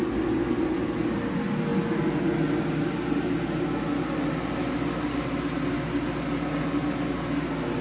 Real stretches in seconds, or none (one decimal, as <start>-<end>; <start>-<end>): 0.0-7.8